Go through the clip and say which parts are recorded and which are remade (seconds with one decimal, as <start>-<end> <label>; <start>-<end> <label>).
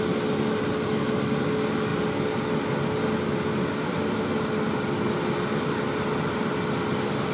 0.0-7.3 recorded